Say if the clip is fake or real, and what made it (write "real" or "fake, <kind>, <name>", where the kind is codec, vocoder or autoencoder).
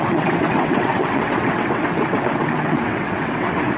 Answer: fake, vocoder, WaveNeXt